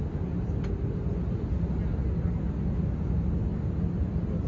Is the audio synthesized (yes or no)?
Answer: no